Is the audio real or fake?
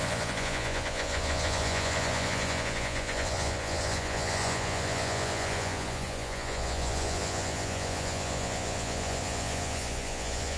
fake